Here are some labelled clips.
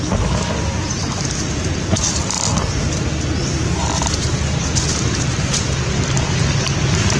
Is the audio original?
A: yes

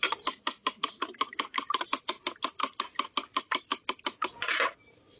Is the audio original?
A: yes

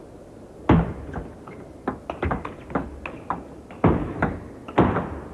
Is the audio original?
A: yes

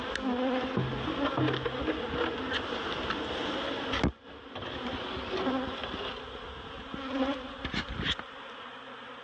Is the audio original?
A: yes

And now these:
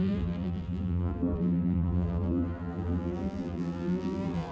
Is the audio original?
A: no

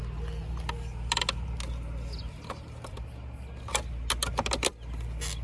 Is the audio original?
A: yes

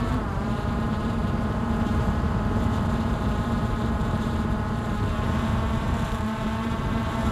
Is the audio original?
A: no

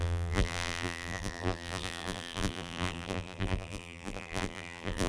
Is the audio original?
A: no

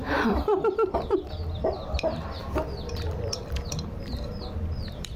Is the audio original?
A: no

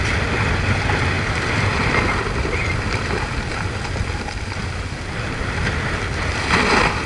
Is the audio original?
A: yes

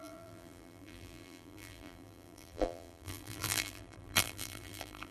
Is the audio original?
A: no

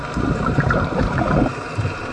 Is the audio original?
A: no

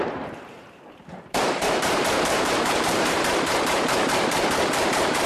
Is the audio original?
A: no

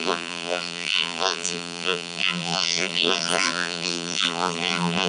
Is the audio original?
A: no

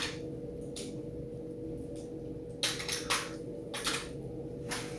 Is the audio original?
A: yes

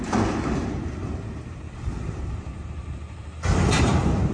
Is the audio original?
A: no